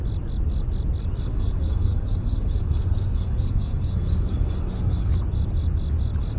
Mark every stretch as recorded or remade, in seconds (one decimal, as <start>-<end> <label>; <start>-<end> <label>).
0.0-1.3 recorded; 1.3-5.1 remade; 5.1-6.4 recorded